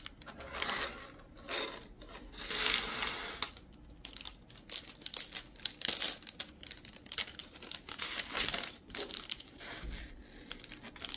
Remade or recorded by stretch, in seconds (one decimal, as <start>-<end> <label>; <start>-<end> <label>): 0.0-7.4 recorded; 7.4-9.9 remade; 9.9-11.2 recorded